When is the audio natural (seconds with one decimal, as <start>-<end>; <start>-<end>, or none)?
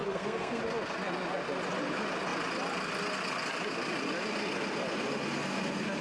0.6-6.0